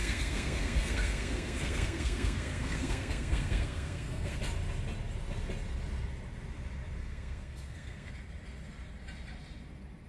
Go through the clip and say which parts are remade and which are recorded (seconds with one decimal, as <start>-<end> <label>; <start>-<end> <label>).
0.0-4.4 remade; 4.4-7.0 recorded; 7.0-8.1 remade; 8.1-10.1 recorded